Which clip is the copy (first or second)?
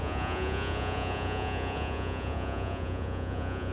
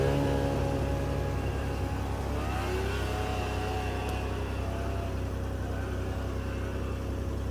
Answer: first